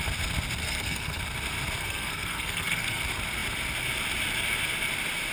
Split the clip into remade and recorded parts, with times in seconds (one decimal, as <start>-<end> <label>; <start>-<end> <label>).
0.0-0.6 recorded; 0.6-1.2 remade; 1.2-1.8 recorded; 1.8-3.0 remade; 3.0-5.3 recorded